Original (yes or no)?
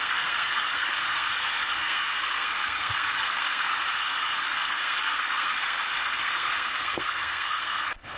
no